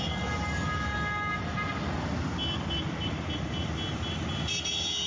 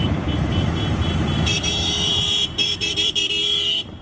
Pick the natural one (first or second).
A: first